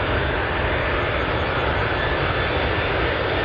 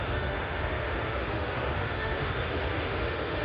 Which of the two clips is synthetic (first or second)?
second